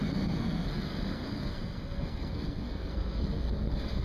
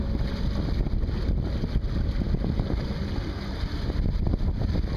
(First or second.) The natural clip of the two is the second